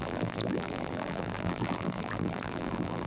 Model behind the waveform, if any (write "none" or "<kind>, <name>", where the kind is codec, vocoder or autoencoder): vocoder, BigVGAN v2